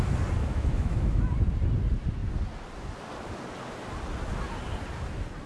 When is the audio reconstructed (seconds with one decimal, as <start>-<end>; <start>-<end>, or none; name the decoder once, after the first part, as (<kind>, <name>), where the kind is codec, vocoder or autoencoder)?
0.4-1.2 (autoencoder, DAC-VAE)